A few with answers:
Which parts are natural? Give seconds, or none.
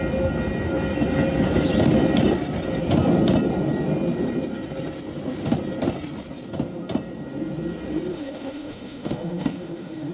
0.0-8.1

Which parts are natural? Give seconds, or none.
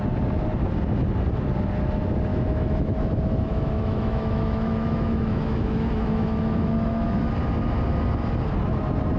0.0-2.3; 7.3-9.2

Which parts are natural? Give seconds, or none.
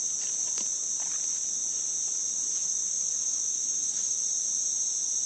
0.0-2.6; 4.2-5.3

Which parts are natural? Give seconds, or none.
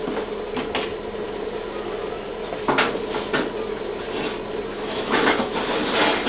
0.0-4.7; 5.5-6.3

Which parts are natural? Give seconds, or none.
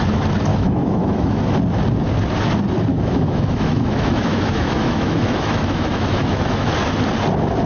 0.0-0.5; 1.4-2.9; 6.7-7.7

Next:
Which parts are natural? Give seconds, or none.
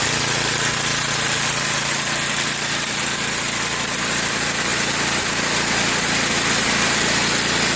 0.0-7.8